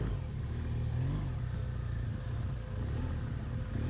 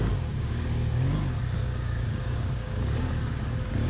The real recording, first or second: first